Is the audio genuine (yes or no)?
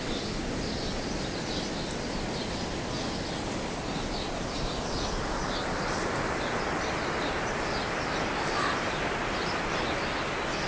yes